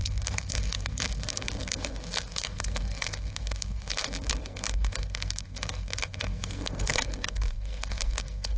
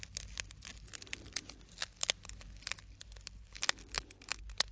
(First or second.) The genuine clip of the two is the second